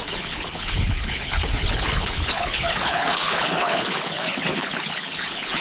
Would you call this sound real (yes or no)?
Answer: no